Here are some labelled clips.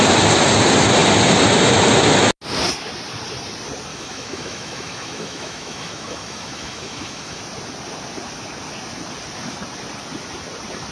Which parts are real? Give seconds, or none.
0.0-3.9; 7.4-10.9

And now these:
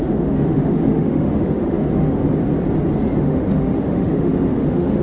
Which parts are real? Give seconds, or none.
2.2-3.2